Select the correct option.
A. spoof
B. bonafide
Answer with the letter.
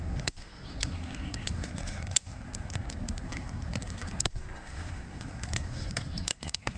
A